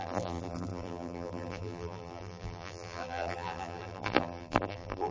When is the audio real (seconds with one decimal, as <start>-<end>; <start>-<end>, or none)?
none